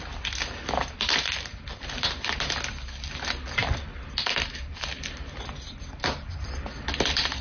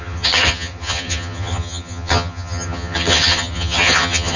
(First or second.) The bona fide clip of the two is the first